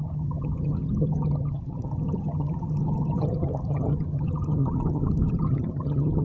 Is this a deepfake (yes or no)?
yes